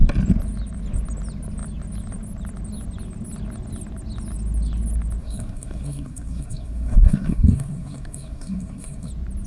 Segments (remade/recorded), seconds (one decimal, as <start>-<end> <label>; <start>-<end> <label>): 0.0-5.2 recorded; 5.2-9.1 remade; 9.1-9.5 recorded